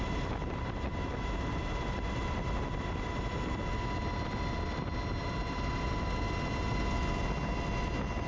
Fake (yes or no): no